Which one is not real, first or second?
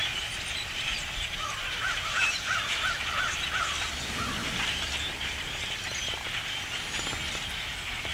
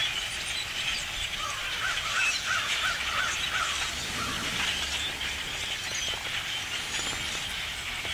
first